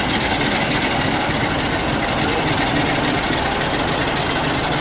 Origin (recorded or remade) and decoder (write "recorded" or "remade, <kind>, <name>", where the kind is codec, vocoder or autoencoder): recorded